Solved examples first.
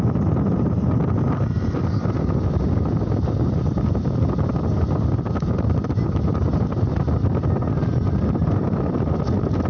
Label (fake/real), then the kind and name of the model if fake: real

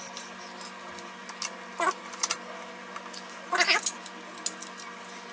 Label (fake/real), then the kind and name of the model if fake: real